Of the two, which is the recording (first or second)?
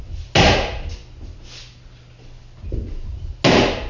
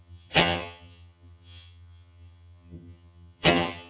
first